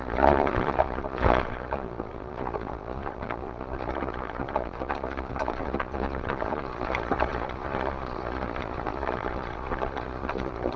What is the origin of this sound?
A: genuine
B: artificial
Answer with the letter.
B